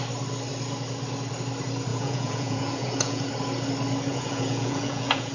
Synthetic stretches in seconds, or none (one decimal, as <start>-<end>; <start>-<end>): 1.9-3.3; 4.1-5.3